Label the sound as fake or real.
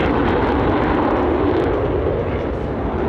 real